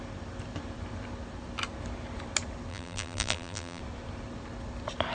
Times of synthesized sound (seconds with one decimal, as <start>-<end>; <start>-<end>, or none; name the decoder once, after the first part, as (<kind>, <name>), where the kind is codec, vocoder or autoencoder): 2.7-3.8 (vocoder, BigVGAN v2)